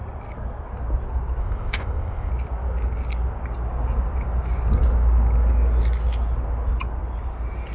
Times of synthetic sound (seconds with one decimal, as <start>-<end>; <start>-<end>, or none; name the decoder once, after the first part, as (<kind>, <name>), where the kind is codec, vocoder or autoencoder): 1.4-2.3 (codec, ZipCodec)